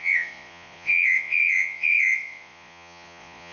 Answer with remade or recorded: remade